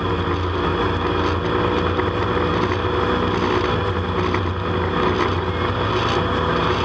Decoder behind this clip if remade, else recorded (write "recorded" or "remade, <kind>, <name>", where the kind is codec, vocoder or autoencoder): recorded